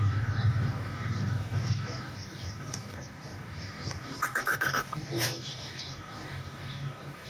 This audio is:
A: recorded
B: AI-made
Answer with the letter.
B